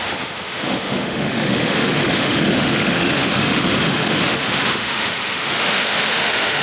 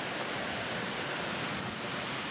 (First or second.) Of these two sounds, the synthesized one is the first